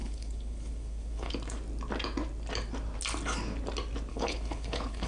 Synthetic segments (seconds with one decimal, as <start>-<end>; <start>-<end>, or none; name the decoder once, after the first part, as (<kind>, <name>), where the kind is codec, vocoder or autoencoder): 0.0-1.3 (codec, HILCodec); 4.1-5.1